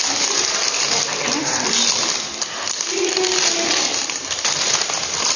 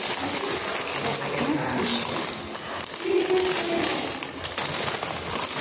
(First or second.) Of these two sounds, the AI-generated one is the first